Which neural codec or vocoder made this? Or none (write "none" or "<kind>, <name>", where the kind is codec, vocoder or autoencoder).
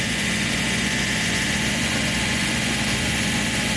vocoder, Vocos